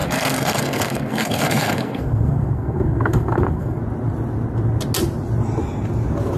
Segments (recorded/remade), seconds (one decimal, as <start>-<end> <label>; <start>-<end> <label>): 0.0-3.8 remade; 3.8-6.4 recorded